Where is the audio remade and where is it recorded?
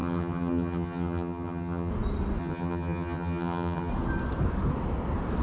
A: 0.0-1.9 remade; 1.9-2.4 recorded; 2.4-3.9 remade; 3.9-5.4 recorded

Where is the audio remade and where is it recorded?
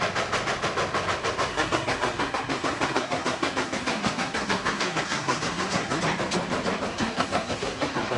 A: 0.0-1.5 recorded; 1.5-6.0 remade; 6.0-6.9 recorded; 6.9-8.2 remade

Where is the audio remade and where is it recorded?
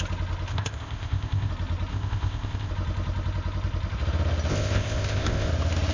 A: 0.0-0.5 recorded; 0.5-1.5 remade; 1.5-1.9 recorded; 1.9-2.7 remade; 2.7-4.5 recorded; 4.5-5.5 remade; 5.5-5.9 recorded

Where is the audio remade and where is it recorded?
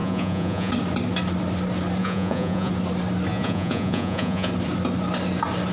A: 0.0-0.7 remade; 0.7-2.0 recorded; 2.0-2.7 remade; 2.7-3.3 recorded; 3.3-4.5 remade; 4.5-5.7 recorded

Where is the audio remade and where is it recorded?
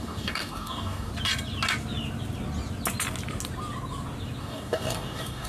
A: 0.0-1.1 remade; 1.1-4.4 recorded; 4.4-5.5 remade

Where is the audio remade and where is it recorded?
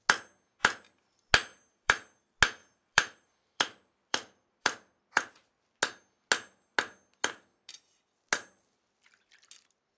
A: 0.0-1.5 recorded; 1.5-2.2 remade; 2.2-2.6 recorded; 2.6-5.3 remade; 5.3-10.0 recorded